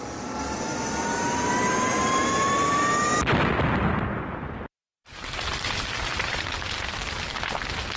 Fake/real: real